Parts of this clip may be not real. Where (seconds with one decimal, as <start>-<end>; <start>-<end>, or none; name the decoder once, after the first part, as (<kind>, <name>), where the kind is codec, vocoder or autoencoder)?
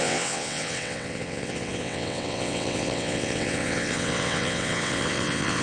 0.0-5.6 (vocoder, WaveNeXt)